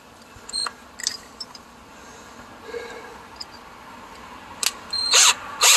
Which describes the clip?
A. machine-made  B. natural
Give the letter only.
B